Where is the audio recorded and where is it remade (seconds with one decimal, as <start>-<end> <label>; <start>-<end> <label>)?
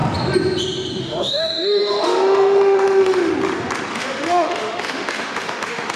0.0-1.0 recorded; 1.0-3.3 remade; 3.3-3.9 recorded; 3.9-6.0 remade